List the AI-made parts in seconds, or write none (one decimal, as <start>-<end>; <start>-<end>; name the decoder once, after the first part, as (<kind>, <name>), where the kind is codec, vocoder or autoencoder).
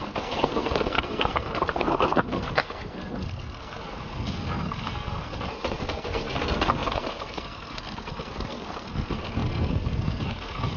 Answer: 0.0-10.8 (codec, SNAC)